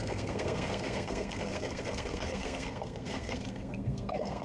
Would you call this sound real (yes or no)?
no